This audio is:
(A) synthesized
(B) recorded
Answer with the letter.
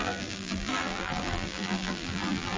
A